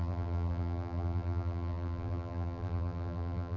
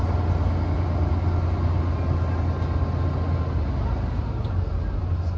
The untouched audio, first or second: second